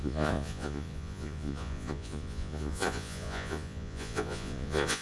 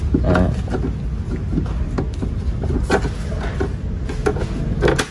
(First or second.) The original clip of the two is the second